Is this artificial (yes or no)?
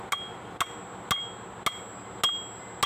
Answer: no